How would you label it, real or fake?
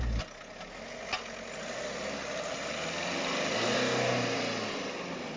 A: real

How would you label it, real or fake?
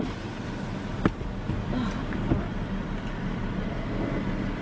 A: real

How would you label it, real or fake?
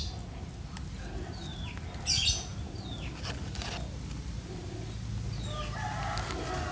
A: real